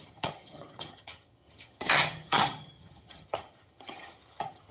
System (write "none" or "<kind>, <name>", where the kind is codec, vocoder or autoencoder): vocoder, HiFi-GAN